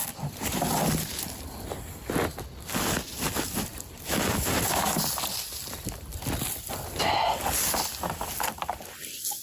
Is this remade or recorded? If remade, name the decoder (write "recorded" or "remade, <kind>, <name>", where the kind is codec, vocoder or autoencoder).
recorded